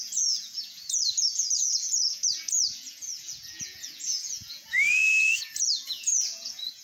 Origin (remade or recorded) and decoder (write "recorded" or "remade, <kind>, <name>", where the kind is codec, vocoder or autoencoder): remade, vocoder, Vocos